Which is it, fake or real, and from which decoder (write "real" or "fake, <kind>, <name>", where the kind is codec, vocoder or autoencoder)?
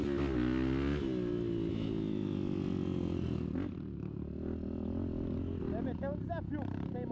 real